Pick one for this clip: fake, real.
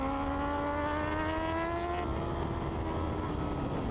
real